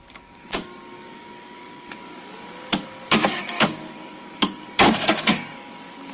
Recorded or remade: remade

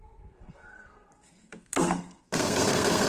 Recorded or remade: remade